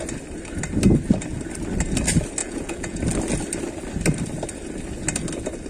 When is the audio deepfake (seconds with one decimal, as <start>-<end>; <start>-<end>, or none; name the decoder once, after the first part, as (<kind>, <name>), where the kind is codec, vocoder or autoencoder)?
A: 2.4-3.0 (vocoder, Vocos)